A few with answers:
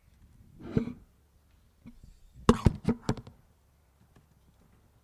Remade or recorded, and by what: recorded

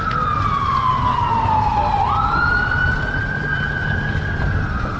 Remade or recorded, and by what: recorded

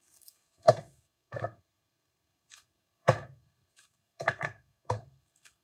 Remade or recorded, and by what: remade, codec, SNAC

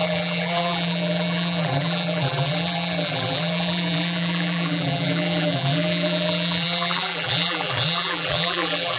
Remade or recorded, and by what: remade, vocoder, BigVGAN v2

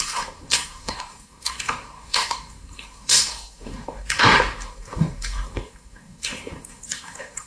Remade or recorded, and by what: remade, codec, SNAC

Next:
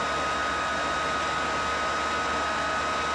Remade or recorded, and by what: recorded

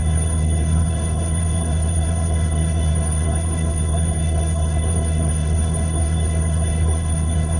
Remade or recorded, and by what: remade, codec, HILCodec